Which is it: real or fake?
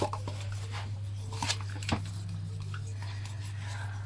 real